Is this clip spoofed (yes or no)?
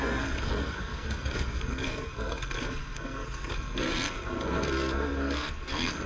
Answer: yes